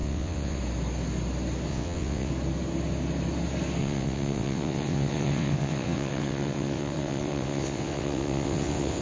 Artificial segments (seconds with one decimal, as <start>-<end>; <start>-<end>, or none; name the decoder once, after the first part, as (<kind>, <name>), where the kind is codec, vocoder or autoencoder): 0.0-0.6 (vocoder, WaveNeXt); 1.7-2.3; 3.8-9.0